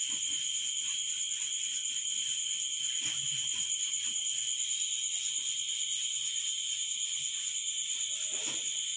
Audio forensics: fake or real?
real